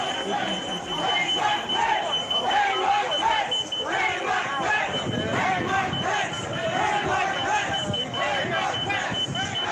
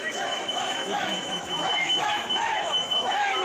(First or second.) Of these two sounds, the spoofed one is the second